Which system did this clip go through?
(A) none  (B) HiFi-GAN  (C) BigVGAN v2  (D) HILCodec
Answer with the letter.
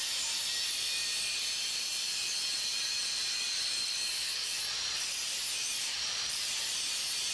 C